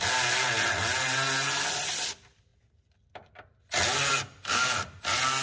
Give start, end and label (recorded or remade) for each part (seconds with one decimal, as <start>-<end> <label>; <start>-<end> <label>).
0.0-5.4 recorded